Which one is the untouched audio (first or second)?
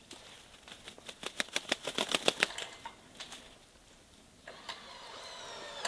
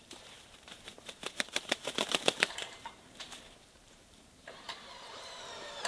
first